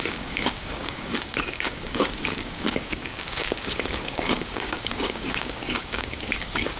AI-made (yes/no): yes